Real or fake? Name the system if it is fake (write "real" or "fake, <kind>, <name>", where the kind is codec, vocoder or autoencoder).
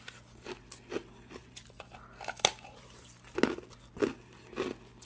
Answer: real